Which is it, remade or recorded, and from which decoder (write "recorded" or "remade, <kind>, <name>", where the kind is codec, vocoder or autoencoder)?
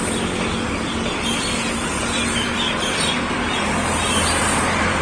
recorded